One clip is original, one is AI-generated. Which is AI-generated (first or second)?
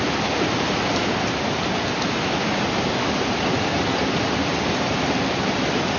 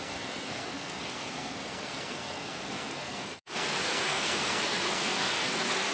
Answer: second